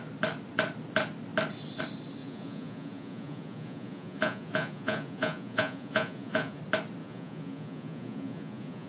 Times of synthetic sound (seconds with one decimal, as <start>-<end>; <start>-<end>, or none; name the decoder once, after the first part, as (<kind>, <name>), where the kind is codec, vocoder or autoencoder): 2.2-6.6 (vocoder, Vocos); 7.0-8.9